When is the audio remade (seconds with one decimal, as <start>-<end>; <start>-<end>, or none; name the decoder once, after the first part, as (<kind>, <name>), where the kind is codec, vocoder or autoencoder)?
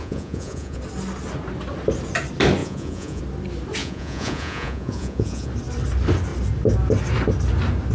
0.0-0.8 (vocoder, Vocos); 2.6-3.2; 3.8-5.5